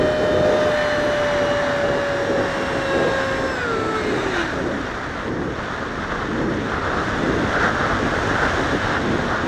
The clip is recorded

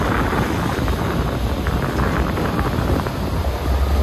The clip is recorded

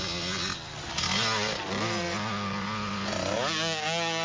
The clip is recorded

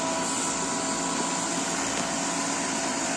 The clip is recorded